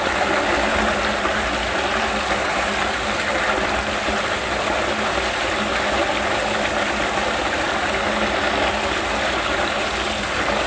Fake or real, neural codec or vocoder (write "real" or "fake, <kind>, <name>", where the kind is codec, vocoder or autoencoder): real